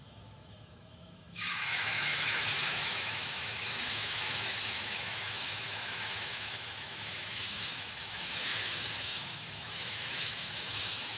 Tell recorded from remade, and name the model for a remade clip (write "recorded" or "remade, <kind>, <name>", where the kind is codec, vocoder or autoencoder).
remade, autoencoder, DAC-VAE